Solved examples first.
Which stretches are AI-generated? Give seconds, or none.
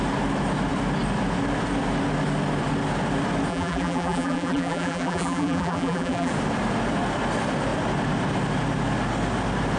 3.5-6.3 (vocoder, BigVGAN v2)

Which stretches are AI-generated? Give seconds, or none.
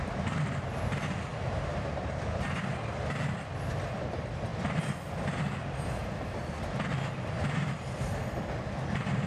1.3-2.2 (vocoder, BigVGAN v2); 6.0-6.7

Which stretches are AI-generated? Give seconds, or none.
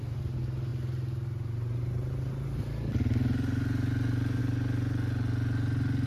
none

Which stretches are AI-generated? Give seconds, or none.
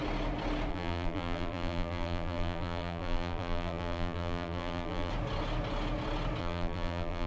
0.7-5.1 (vocoder, BigVGAN v2); 6.4-7.3